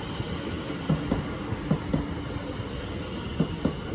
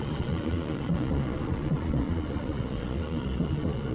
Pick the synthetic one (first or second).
second